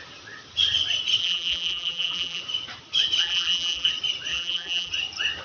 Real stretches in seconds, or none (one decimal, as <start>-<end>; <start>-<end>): 0.0-1.2; 2.4-3.2; 3.9-4.3; 4.9-5.4